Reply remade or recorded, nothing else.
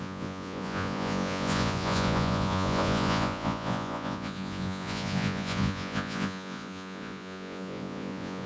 remade